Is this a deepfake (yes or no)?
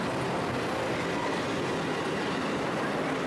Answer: no